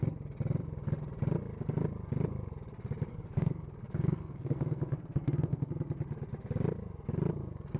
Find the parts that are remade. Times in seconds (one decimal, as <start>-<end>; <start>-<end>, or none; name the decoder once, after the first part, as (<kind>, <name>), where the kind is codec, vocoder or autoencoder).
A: 3.1-5.7 (codec, SNAC)